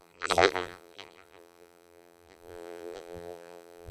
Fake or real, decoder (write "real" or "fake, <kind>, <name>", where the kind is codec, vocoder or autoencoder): fake, vocoder, BigVGAN v2